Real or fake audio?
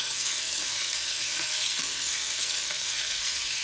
fake